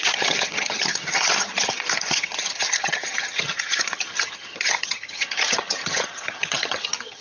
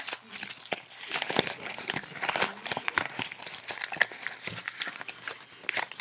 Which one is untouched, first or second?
second